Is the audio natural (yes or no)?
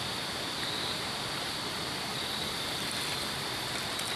no